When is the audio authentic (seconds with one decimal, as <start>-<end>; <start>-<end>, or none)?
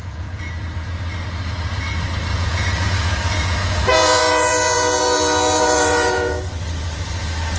0.5-2.3; 6.4-7.6